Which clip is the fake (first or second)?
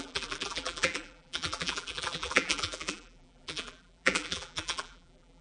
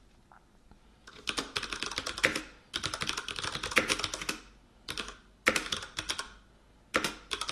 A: first